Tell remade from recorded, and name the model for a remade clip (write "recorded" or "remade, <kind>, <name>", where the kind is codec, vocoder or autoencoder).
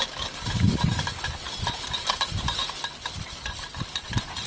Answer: recorded